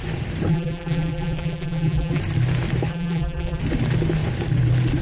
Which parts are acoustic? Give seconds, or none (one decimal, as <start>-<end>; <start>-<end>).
0.0-0.5; 2.2-2.9; 3.6-5.0